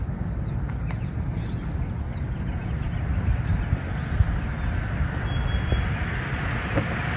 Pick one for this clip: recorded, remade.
recorded